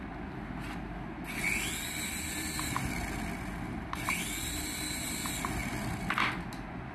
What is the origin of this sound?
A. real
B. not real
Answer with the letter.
A